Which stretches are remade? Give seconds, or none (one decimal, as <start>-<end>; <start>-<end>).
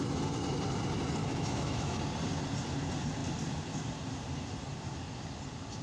1.2-2.0